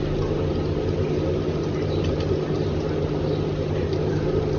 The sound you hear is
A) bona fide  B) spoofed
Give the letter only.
A